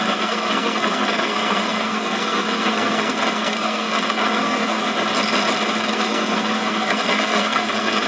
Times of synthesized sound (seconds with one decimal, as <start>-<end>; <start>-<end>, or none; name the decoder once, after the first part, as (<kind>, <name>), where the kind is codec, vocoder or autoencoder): 0.0-4.8 (codec, SNAC); 5.8-8.1